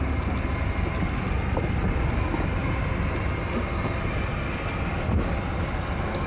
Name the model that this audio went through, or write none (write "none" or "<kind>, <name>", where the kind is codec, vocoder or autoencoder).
none